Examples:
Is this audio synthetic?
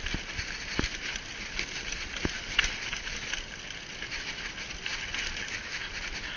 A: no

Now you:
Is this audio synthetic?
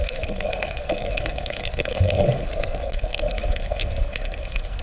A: yes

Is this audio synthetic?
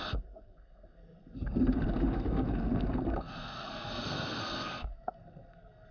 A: yes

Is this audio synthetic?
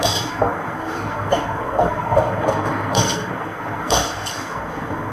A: yes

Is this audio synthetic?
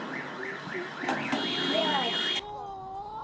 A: no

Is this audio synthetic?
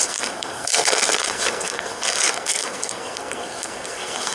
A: yes